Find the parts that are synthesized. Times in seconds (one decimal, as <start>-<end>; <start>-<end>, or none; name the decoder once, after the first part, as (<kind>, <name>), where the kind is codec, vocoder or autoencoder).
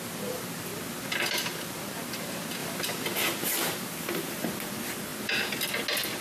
none